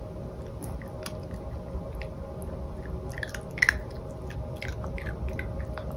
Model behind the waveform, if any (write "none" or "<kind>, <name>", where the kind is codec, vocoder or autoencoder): none